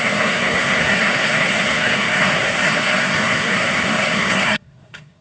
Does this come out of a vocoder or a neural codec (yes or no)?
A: yes